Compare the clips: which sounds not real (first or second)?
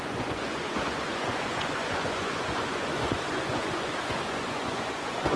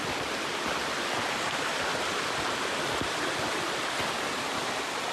first